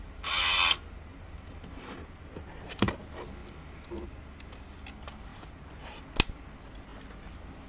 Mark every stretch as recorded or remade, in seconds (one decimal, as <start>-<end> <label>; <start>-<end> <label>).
0.0-1.1 recorded; 1.1-2.9 remade; 2.9-5.3 recorded; 5.3-6.0 remade; 6.0-7.7 recorded